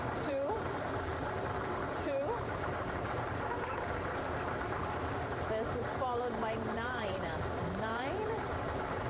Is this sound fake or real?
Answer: fake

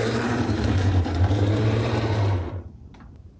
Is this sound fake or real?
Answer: fake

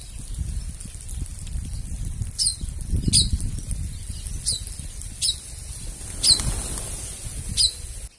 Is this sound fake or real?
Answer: real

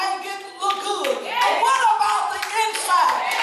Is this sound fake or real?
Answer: real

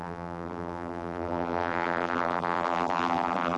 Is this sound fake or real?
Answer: fake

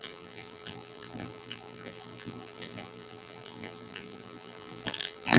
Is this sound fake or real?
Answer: fake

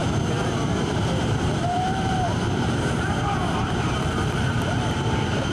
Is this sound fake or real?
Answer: fake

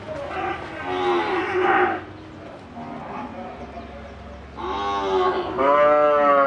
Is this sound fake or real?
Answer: real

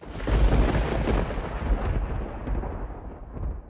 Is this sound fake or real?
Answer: real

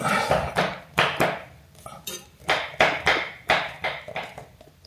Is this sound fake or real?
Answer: fake